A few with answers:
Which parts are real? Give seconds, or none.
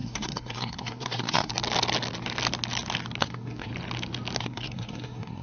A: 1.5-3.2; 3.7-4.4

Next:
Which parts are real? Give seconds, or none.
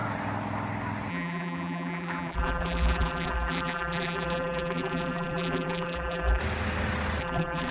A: 0.0-1.1; 6.4-7.2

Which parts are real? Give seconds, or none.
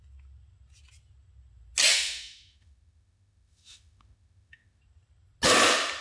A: 0.0-1.9; 4.8-6.0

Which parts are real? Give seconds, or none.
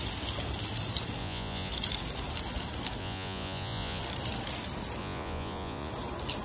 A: 0.0-1.2; 1.7-3.0; 4.0-5.0; 5.9-6.4